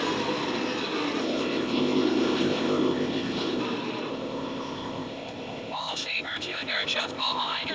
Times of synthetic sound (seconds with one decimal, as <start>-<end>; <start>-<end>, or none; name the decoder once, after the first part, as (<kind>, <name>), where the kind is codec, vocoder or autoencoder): 1.2-3.6 (codec, ZipCodec); 4.1-7.7